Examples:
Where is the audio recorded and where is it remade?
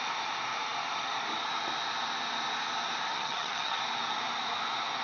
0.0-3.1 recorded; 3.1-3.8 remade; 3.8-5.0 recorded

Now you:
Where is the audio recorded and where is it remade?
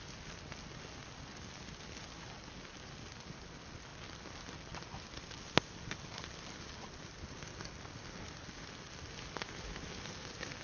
0.0-10.6 recorded